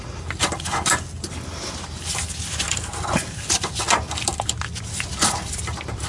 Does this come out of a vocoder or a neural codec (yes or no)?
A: no